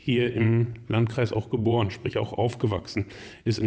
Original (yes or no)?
no